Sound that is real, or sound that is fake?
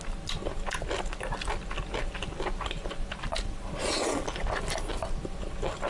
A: real